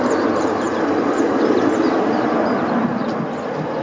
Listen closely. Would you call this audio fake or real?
real